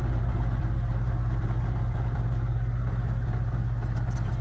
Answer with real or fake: real